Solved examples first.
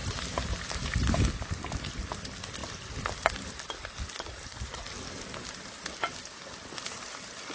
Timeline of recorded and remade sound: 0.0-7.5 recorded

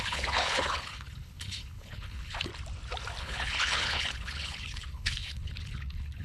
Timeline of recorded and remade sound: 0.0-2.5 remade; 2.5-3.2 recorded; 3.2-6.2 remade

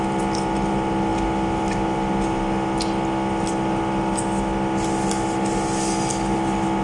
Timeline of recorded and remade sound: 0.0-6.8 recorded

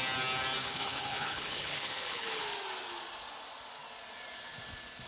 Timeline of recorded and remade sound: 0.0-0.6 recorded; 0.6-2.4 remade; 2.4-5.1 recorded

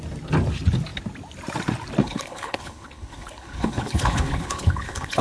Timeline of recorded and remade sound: 0.0-2.0 recorded; 2.0-5.2 remade

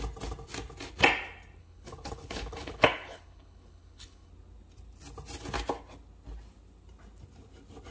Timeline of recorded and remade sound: 0.0-1.6 recorded; 1.6-4.3 remade; 4.3-7.9 recorded